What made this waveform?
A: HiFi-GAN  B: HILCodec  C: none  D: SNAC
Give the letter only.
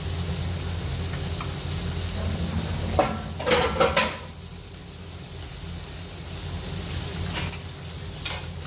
C